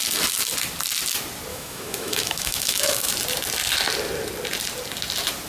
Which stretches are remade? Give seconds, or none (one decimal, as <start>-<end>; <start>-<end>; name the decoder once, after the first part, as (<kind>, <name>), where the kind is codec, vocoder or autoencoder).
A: 1.5-3.1 (autoencoder, DAC-VAE)